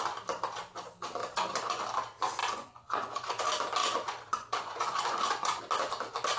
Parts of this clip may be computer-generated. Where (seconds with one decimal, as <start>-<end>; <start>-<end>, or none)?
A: 1.2-1.8; 2.4-3.4; 3.8-5.6

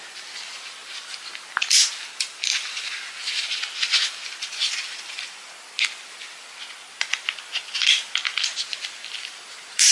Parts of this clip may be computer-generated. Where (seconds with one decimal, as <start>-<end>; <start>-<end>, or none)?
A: none

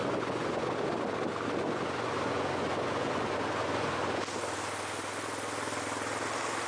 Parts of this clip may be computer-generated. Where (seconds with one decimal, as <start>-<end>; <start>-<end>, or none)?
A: 0.0-0.7; 1.6-4.2

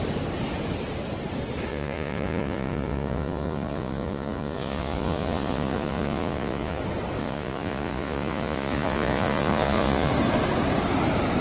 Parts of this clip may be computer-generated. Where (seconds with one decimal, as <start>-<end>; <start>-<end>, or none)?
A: 1.7-6.8; 7.2-10.1